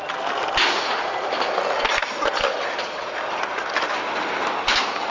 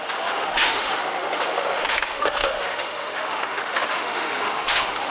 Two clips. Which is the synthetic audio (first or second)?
second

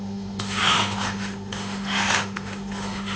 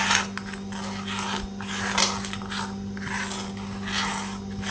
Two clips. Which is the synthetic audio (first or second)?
first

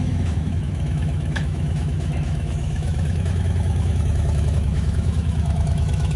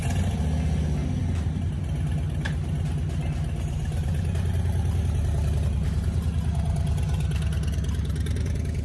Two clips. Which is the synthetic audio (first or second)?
first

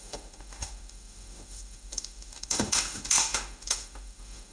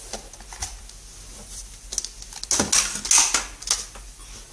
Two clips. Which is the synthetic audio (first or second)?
first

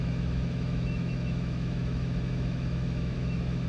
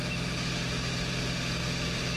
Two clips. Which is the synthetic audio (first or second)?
first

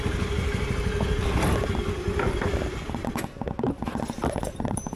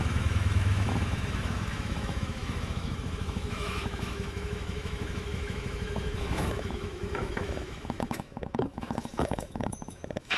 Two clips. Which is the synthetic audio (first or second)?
second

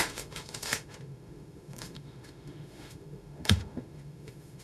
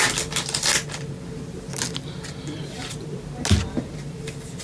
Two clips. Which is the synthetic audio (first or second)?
first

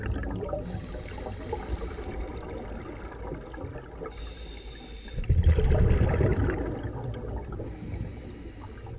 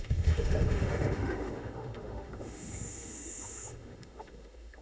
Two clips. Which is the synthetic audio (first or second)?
second